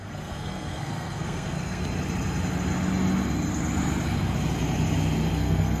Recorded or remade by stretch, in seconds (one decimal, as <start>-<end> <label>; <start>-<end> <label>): 0.0-1.8 remade; 1.8-5.3 recorded; 5.3-5.8 remade